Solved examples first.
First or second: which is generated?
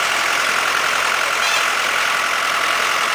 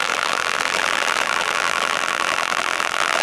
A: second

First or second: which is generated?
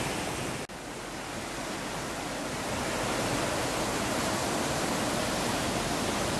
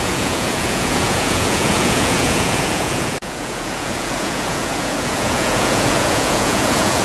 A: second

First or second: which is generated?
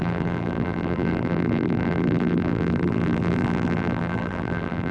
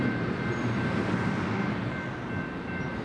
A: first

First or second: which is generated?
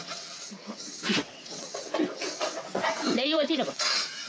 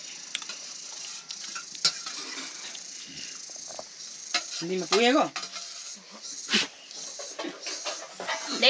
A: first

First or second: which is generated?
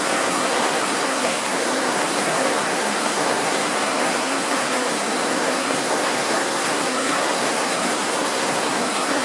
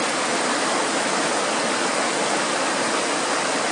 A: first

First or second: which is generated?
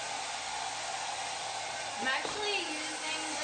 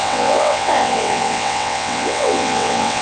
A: second